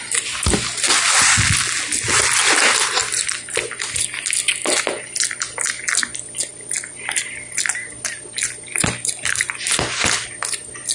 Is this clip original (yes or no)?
yes